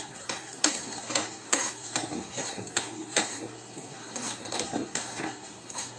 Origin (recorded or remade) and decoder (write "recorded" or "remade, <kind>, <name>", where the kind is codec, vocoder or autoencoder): remade, codec, SNAC